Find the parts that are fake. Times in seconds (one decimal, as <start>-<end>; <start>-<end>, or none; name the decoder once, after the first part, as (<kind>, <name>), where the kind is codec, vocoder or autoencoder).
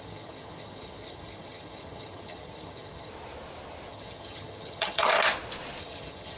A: 0.0-3.1 (vocoder, HiFi-GAN); 3.9-5.1; 5.8-6.4